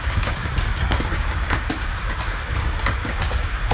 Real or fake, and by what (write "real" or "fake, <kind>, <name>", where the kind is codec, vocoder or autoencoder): fake, codec, DAC